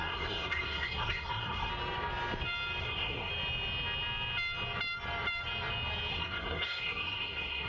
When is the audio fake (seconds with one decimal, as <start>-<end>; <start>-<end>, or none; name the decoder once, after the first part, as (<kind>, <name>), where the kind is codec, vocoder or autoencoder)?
0.0-1.7 (codec, SNAC); 2.8-3.3; 6.1-7.7